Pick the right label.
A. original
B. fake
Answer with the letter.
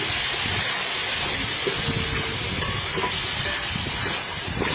A